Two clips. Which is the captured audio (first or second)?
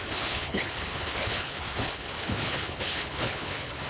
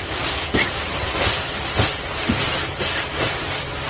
second